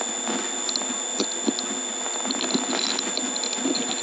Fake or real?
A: real